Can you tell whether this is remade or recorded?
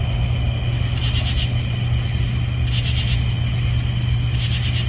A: recorded